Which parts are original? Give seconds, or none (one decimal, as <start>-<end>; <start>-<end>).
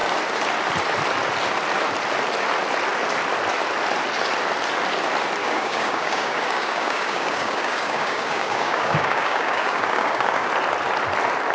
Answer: 0.0-5.4; 10.5-11.5